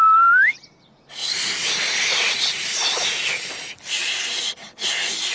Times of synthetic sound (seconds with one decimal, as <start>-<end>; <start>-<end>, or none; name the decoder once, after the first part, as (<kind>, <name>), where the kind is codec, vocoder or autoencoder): none